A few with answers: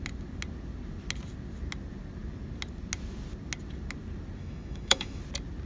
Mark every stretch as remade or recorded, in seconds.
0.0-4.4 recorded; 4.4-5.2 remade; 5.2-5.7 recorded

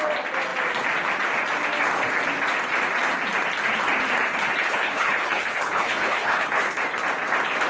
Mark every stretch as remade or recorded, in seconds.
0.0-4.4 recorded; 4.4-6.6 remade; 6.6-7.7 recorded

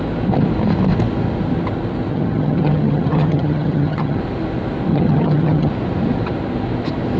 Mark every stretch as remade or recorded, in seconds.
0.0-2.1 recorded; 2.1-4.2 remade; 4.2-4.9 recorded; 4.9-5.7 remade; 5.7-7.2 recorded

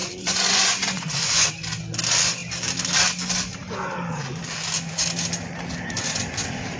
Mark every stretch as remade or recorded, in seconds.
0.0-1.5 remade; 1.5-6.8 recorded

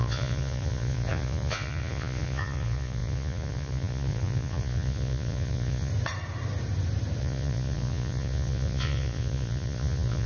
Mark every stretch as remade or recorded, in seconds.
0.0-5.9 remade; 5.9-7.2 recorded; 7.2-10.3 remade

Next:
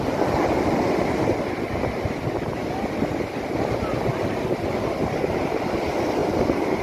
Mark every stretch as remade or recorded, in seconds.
0.0-6.8 recorded